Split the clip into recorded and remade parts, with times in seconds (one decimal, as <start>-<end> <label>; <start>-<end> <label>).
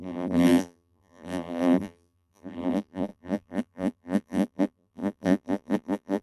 0.0-6.2 remade